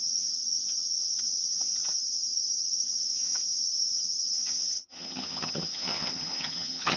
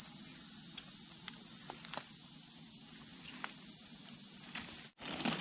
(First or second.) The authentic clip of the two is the second